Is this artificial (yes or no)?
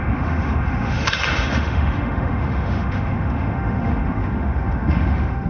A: yes